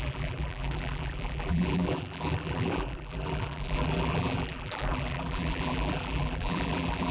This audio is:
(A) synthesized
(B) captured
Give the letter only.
A